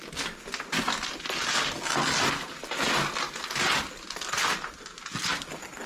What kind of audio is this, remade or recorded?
recorded